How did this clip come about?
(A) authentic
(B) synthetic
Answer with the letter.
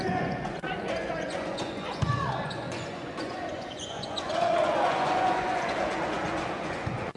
B